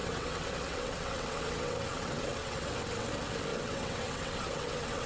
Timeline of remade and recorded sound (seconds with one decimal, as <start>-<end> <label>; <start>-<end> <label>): 0.0-3.1 remade; 3.1-3.5 recorded; 3.5-5.1 remade